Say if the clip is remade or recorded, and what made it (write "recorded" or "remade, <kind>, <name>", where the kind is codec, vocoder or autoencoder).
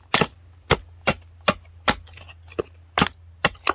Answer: recorded